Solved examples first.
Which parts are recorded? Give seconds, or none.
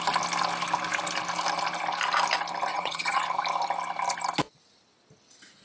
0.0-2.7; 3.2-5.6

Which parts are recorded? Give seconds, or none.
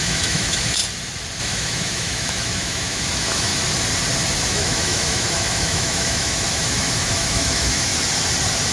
0.8-1.4; 3.5-4.5; 7.9-8.7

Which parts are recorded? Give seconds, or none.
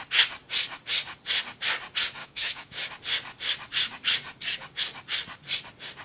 0.0-2.2; 2.9-6.0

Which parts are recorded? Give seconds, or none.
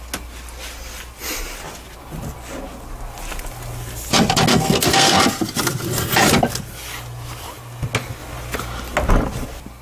0.0-4.5; 5.2-9.8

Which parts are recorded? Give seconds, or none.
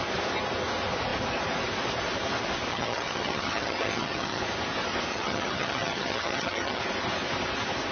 0.0-2.7; 4.4-5.1; 6.8-7.9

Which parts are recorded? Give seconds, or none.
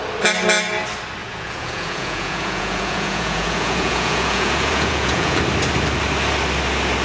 0.0-1.2; 5.4-7.0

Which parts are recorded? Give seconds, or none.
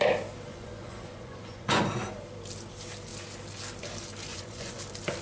0.0-0.5; 1.8-4.3; 4.8-5.2